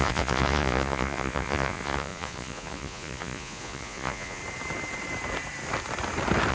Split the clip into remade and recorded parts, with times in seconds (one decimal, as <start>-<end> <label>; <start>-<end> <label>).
0.0-4.4 remade; 4.4-6.5 recorded